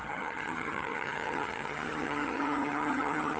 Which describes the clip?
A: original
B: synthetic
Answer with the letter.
B